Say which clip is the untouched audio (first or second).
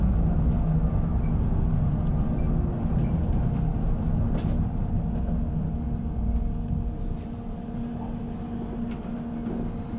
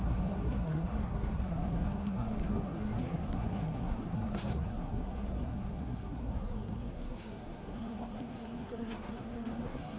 first